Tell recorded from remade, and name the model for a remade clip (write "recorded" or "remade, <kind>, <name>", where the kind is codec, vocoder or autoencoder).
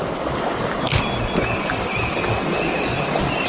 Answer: recorded